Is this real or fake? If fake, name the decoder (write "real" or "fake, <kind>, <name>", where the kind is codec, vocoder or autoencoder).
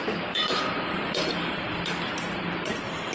fake, vocoder, BigVGAN v2